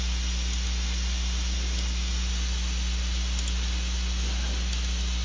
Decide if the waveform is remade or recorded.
recorded